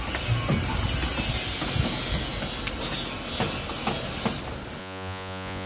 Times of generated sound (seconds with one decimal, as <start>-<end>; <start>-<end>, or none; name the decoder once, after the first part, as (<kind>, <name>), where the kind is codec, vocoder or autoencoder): 4.8-5.7 (vocoder, Vocos)